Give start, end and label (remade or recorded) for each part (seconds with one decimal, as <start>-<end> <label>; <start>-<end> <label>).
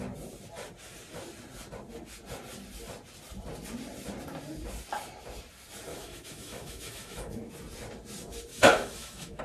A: 0.0-5.9 recorded; 5.9-7.5 remade; 7.5-8.5 recorded; 8.5-9.4 remade